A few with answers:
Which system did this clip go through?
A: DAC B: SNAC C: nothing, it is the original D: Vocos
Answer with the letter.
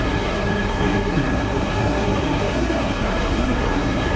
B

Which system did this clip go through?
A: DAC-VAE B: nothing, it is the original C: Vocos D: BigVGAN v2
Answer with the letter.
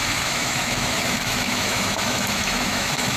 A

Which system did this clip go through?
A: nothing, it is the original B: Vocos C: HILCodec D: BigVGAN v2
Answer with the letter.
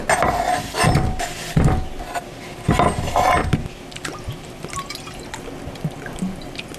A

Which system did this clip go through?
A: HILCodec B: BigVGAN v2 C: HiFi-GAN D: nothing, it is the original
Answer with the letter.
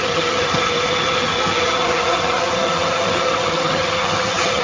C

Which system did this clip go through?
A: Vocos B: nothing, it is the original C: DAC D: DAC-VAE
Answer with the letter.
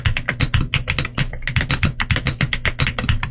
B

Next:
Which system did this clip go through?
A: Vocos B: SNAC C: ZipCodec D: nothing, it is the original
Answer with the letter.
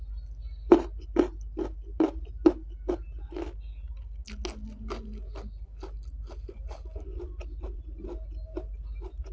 D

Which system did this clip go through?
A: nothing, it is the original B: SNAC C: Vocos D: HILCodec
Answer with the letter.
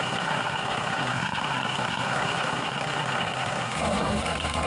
B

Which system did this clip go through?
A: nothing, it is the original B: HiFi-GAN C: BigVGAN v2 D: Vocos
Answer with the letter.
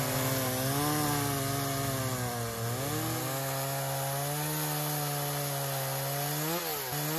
A